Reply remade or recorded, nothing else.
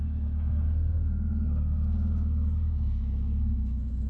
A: remade